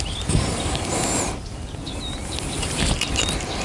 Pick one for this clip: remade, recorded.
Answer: remade